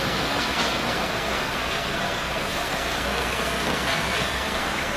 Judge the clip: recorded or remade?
remade